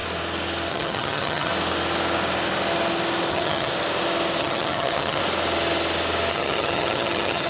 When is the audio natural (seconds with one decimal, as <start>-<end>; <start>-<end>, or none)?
0.0-0.7; 1.5-3.3; 3.7-4.4; 5.2-6.3